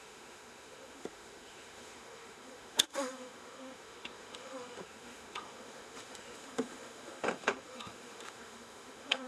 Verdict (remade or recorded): remade